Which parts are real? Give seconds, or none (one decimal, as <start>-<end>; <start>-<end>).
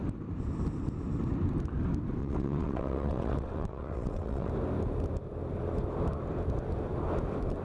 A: 0.0-2.2; 4.5-7.6